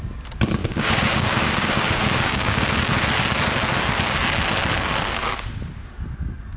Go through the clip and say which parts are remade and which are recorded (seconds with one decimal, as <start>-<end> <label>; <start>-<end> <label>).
0.0-0.6 recorded; 0.6-2.7 remade; 2.7-6.6 recorded